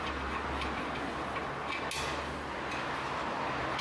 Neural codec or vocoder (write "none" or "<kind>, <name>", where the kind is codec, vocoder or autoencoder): none